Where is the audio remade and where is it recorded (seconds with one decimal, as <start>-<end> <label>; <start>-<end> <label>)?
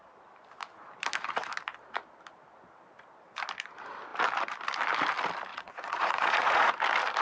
0.0-5.5 recorded; 5.5-6.7 remade; 6.7-7.2 recorded